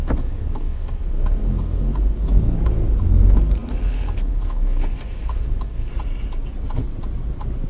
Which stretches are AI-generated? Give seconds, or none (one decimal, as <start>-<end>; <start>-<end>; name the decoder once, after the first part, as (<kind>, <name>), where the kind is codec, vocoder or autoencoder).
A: 0.0-5.9 (codec, SNAC)